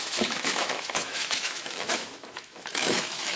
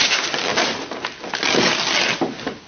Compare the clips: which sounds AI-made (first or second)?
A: first